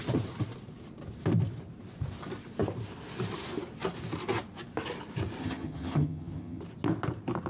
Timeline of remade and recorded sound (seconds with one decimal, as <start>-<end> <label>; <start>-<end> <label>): 0.0-5.4 recorded; 5.4-6.6 remade; 6.6-7.5 recorded